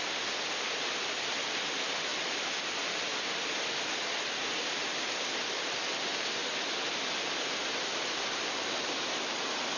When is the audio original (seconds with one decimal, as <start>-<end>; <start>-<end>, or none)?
0.0-9.8